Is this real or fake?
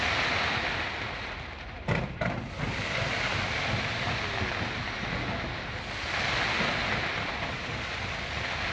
real